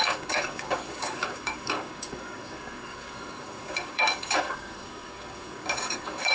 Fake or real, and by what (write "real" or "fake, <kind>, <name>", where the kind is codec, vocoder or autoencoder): fake, codec, DAC